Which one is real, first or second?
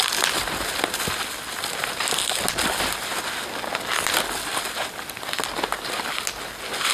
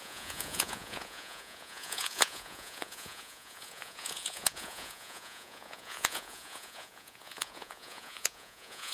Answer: first